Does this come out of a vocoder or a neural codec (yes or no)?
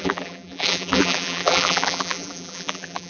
yes